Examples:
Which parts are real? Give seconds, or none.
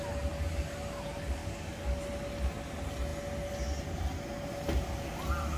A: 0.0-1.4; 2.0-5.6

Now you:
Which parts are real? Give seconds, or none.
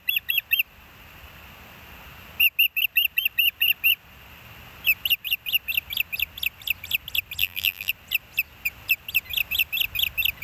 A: 0.0-7.4; 7.9-10.4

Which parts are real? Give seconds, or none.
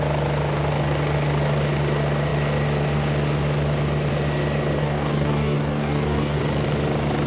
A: 0.0-4.8; 6.4-7.3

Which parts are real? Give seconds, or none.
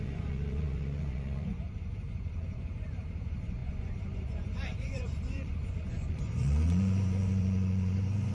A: none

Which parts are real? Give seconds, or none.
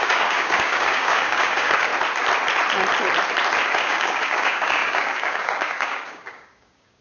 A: 1.9-3.7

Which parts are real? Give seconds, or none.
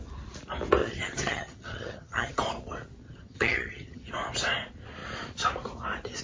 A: 0.0-0.8; 2.4-3.0; 4.1-6.2